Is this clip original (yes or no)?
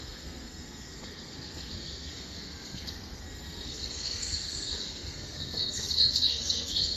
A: no